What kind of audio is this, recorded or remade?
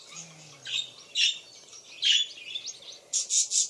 recorded